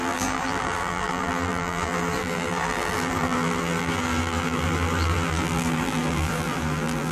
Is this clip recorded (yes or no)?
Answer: no